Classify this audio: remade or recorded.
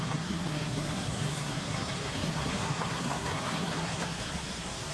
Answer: remade